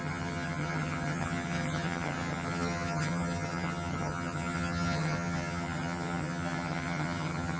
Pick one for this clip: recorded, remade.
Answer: remade